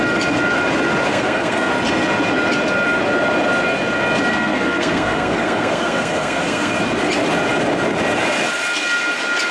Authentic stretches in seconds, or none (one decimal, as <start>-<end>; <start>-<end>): 0.0-1.1; 1.7-4.3; 6.8-9.5